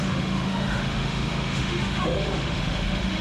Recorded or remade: remade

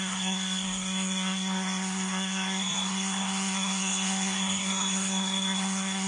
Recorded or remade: remade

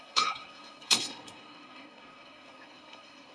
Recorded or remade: remade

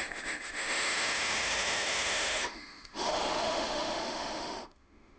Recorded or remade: remade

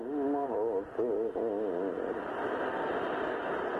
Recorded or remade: recorded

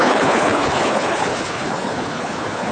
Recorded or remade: remade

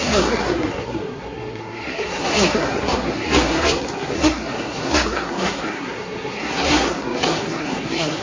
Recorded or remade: remade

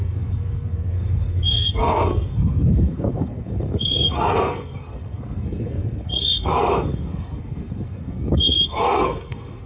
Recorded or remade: remade